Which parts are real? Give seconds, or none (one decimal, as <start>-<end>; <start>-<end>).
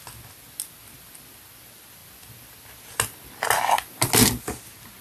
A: 0.0-5.0